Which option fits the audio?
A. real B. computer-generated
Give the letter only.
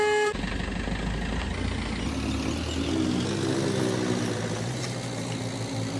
A